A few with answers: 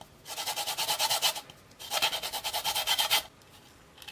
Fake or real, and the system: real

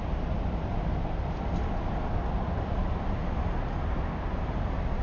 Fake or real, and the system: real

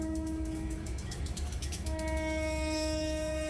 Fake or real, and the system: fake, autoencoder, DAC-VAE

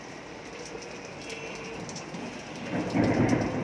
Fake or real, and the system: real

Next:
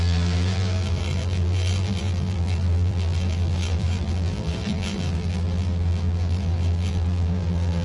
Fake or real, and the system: fake, vocoder, BigVGAN v2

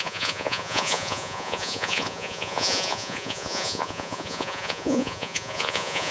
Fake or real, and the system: fake, vocoder, Vocos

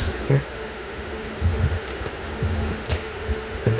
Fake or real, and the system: fake, autoencoder, DAC-VAE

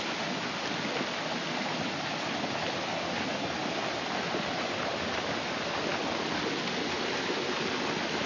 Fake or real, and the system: real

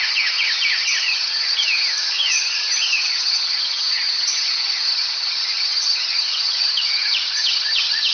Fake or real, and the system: fake, vocoder, HiFi-GAN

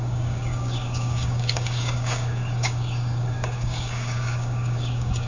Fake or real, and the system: fake, codec, DAC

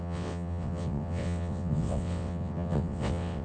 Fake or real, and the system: fake, vocoder, WaveNeXt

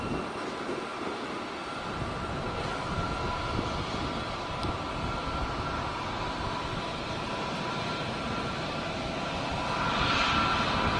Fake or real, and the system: real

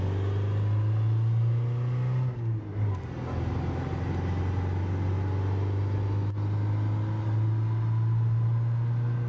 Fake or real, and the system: real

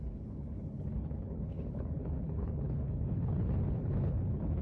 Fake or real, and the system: fake, codec, HILCodec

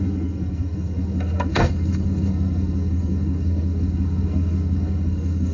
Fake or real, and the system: fake, codec, SNAC